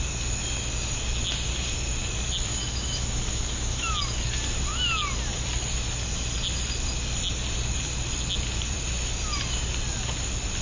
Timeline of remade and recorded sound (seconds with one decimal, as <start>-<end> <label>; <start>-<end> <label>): 0.0-2.5 recorded; 2.5-3.9 remade; 3.9-10.6 recorded